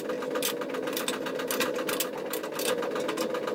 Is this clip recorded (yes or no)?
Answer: yes